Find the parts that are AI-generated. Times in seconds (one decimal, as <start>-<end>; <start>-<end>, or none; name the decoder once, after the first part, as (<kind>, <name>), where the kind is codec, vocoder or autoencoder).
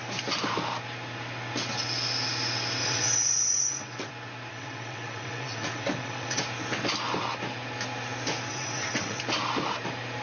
2.8-4.1 (vocoder, WaveNeXt); 4.5-6.4; 8.5-9.2